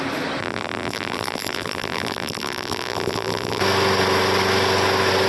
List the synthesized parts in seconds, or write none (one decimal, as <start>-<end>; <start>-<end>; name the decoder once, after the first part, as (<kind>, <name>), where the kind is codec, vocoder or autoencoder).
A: 0.4-3.6 (vocoder, BigVGAN v2)